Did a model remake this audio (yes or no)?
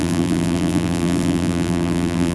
yes